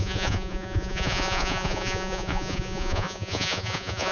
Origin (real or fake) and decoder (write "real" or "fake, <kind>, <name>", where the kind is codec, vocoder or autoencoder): fake, vocoder, Vocos